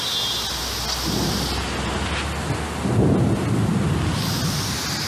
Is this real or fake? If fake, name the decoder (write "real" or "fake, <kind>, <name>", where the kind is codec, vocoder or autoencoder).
real